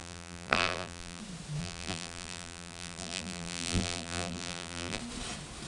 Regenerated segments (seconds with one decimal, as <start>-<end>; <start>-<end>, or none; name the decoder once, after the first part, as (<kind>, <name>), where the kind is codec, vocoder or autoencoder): 0.0-1.2 (vocoder, BigVGAN v2); 1.6-5.0